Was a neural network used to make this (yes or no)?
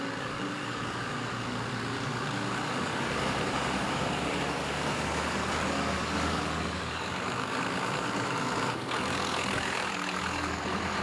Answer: yes